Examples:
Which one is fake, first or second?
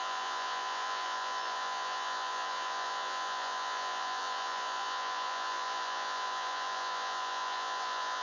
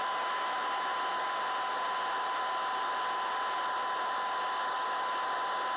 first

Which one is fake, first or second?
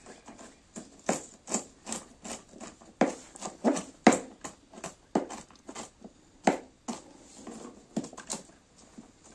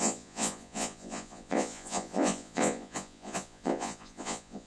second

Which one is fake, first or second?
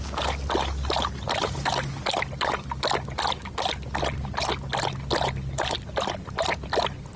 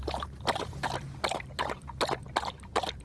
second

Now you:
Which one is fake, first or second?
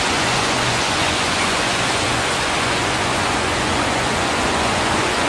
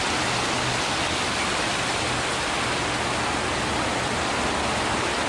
first